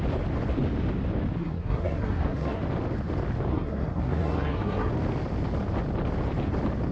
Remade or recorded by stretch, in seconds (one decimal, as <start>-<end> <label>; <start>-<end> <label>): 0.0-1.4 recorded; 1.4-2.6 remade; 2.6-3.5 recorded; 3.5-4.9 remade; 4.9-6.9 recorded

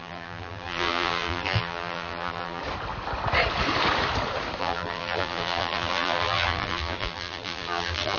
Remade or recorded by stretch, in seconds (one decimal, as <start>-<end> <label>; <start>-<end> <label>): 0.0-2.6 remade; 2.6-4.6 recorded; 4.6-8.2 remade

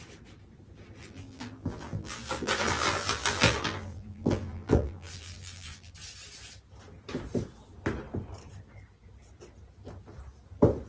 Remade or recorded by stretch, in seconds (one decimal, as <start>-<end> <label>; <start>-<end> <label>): 0.0-1.0 recorded; 1.0-5.9 remade; 5.9-10.9 recorded

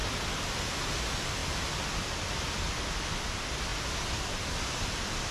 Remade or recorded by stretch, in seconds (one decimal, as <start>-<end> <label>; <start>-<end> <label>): 0.0-5.3 recorded